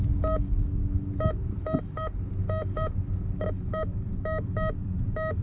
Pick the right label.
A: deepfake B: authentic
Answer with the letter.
B